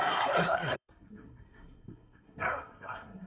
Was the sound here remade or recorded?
remade